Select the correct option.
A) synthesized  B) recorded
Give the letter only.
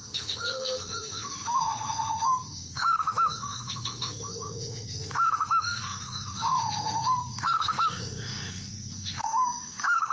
A